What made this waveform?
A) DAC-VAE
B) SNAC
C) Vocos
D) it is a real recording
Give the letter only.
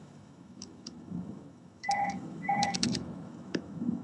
A